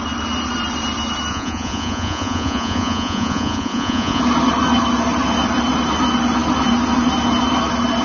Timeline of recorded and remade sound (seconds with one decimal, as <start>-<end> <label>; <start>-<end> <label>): 0.0-1.3 recorded; 1.3-4.2 remade; 4.2-8.0 recorded